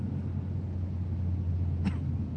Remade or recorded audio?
recorded